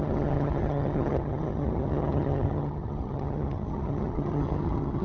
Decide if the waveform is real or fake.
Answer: fake